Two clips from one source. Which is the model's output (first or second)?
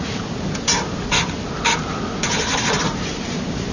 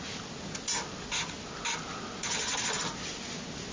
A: first